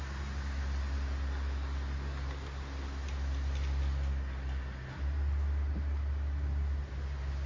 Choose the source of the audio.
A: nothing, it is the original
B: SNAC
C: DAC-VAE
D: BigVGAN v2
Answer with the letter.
A